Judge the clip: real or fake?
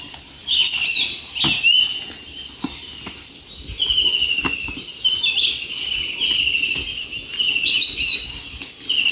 real